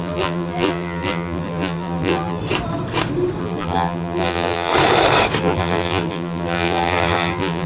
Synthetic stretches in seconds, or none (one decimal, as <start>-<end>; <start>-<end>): 0.0-2.4; 3.4-4.7; 5.4-7.7